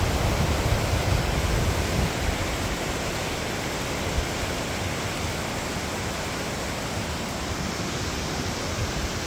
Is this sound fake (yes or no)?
no